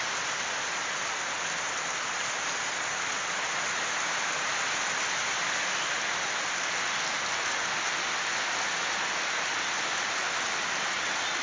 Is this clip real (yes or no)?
yes